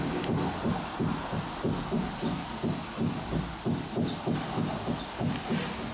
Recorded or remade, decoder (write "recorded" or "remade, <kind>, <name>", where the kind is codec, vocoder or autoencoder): recorded